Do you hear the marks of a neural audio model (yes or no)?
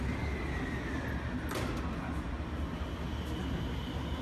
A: no